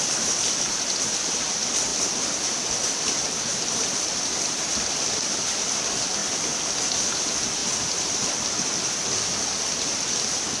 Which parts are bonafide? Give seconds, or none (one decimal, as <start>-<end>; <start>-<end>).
0.0-1.9; 5.6-6.2; 7.1-7.6; 8.3-10.6

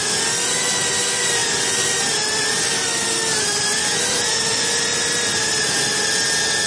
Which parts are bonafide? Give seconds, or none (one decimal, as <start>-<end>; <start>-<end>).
0.0-6.7

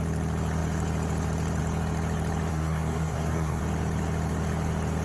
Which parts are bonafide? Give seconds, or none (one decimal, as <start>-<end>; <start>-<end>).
0.0-2.5; 3.6-5.0

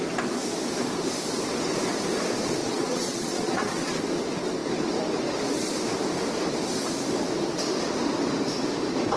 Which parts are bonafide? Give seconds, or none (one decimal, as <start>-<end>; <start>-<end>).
0.0-2.6; 4.0-9.2

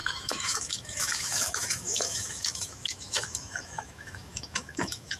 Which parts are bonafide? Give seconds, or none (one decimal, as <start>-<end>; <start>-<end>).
none

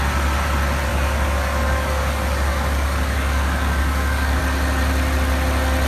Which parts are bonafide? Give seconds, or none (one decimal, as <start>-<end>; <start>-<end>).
0.0-0.9; 4.4-5.9

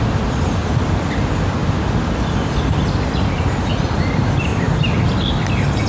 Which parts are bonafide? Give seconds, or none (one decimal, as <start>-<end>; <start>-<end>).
0.0-5.9